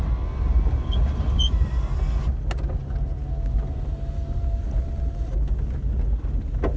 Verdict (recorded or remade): recorded